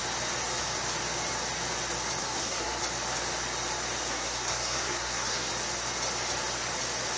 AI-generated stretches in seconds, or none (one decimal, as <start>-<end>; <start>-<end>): 2.2-2.8; 4.1-5.5